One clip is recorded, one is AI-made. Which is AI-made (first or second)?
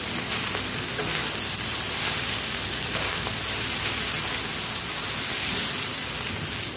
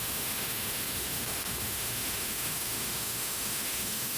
second